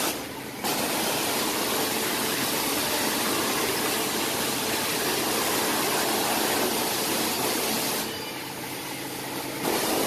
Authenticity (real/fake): real